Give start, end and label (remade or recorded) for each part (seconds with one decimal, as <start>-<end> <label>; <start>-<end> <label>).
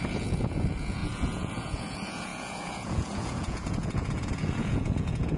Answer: 0.0-5.4 remade